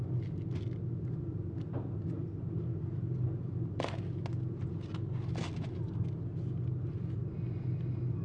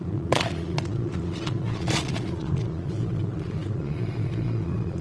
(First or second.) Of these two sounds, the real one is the first